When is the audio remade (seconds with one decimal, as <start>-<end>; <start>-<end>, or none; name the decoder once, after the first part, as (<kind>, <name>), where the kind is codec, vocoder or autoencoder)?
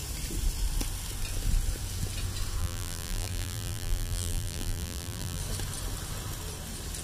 2.6-5.4 (vocoder, BigVGAN v2)